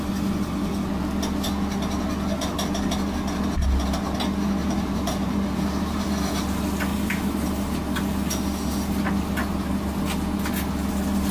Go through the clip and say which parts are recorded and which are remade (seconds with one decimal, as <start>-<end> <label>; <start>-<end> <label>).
0.0-4.6 recorded; 4.6-6.1 remade; 6.1-6.9 recorded; 6.9-7.5 remade; 7.5-11.3 recorded